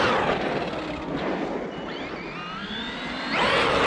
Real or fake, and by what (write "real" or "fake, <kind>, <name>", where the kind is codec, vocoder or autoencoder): real